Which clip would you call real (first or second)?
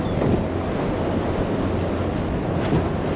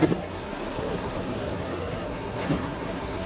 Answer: first